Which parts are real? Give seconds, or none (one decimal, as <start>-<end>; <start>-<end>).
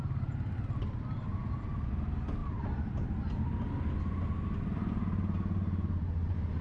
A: 0.0-6.6